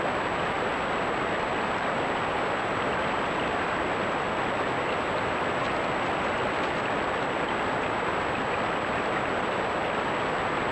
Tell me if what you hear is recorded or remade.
recorded